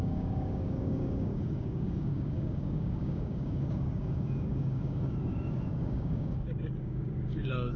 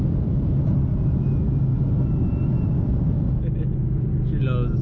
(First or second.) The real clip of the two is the second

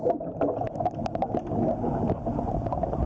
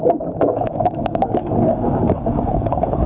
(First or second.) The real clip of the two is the first